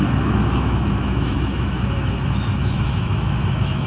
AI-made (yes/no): yes